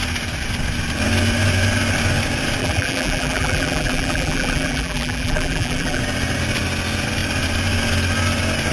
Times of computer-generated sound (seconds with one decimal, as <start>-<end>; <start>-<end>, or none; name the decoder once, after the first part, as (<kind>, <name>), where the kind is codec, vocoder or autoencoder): 2.6-6.0 (vocoder, BigVGAN v2)